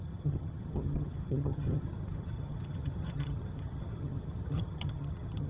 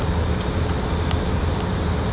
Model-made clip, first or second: first